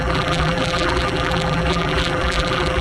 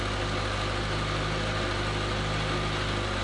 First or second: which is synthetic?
first